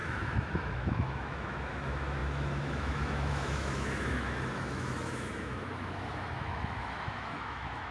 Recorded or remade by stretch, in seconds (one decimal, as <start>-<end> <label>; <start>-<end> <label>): 0.0-7.9 remade